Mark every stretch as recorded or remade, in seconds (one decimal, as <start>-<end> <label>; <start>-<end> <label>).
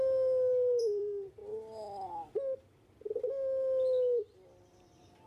0.0-1.4 remade; 1.4-4.6 recorded; 4.6-5.3 remade